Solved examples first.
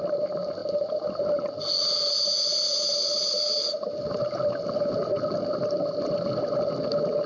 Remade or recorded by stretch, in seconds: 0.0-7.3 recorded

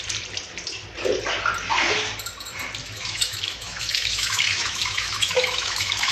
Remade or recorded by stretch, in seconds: 0.0-2.8 recorded; 2.8-6.1 remade

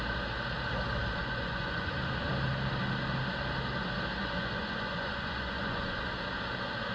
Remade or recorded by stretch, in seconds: 0.0-1.2 recorded; 1.2-1.9 remade; 1.9-4.2 recorded; 4.2-6.0 remade; 6.0-6.9 recorded

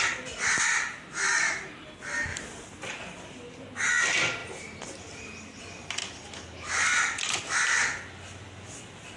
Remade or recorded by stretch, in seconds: 0.0-6.0 recorded; 6.0-6.7 remade; 6.7-9.2 recorded

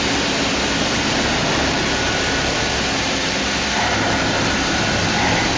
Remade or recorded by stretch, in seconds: 0.0-1.4 recorded; 1.4-4.4 remade; 4.4-5.6 recorded

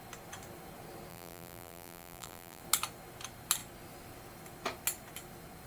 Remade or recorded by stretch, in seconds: 0.0-1.1 recorded; 1.1-2.6 remade; 2.6-5.7 recorded

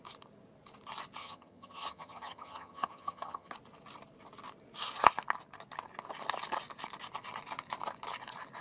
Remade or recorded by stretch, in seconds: 0.0-1.2 recorded; 1.2-3.5 remade; 3.5-8.6 recorded